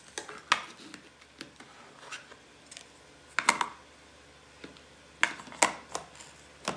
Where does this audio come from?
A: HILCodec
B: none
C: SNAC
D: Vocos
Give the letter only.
B